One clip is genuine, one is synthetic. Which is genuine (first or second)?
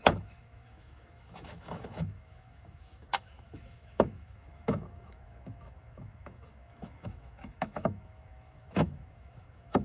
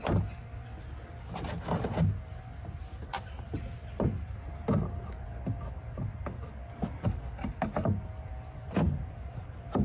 second